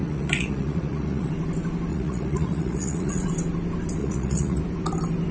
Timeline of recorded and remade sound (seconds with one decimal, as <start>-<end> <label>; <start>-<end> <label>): 0.0-1.3 remade; 1.3-1.9 recorded; 1.9-3.3 remade; 3.3-4.0 recorded; 4.0-4.6 remade; 4.6-5.3 recorded